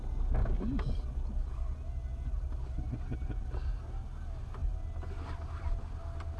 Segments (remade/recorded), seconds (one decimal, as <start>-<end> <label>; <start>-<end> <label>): 0.0-6.4 recorded